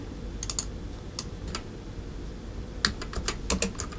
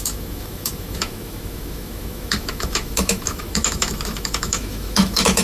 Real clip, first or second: first